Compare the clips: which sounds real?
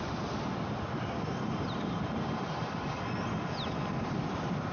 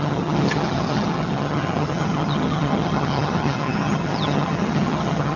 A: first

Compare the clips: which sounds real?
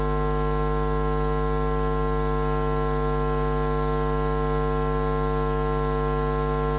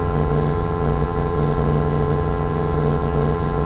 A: first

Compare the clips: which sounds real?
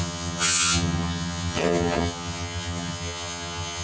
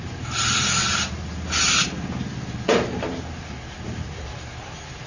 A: second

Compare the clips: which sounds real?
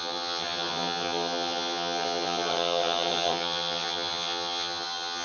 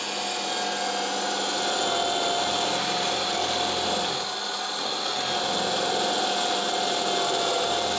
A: second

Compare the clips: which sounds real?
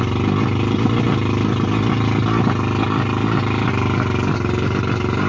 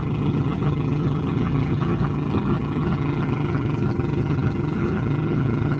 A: first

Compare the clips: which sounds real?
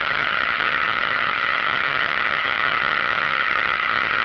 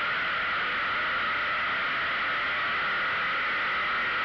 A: second